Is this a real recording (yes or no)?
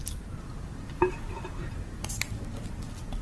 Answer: yes